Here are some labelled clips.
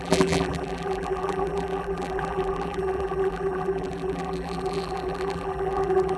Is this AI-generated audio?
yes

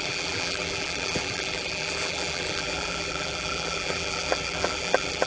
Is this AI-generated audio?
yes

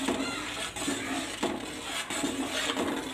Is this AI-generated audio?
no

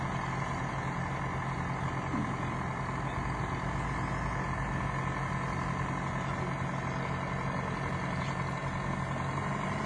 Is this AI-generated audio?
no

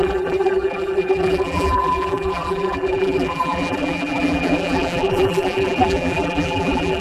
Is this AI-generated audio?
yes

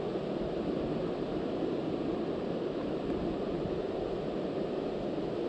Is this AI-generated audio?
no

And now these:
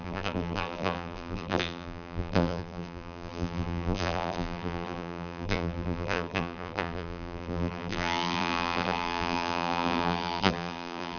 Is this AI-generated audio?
yes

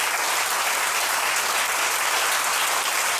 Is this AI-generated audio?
yes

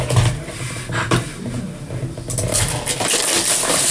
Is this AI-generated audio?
no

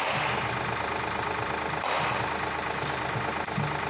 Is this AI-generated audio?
no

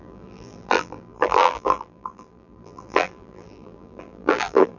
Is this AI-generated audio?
yes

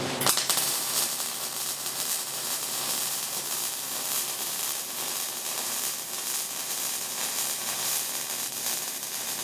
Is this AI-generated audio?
yes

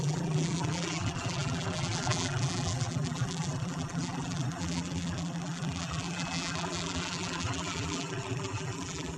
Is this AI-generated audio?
yes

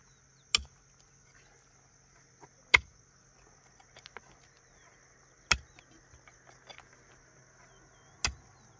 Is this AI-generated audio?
no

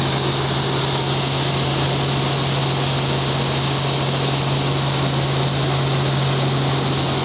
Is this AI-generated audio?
no